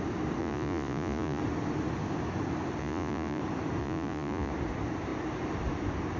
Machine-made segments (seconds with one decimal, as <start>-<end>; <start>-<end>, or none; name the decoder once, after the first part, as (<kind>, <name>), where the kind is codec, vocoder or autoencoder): 0.4-1.4 (vocoder, Vocos); 2.8-3.4; 3.8-4.5